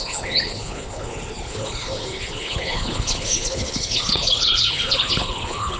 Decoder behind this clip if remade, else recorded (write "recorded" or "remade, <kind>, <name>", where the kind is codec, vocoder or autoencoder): remade, codec, HILCodec